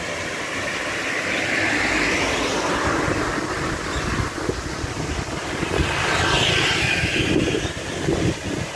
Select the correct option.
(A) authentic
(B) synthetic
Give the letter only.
A